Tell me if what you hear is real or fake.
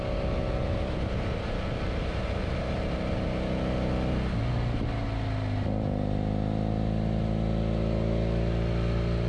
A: real